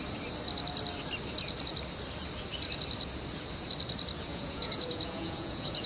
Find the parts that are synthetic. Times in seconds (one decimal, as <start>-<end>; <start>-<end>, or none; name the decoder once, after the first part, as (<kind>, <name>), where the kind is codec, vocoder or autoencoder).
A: 4.3-5.9 (vocoder, Vocos)